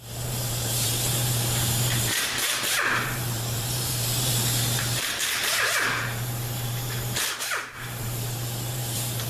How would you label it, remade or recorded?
remade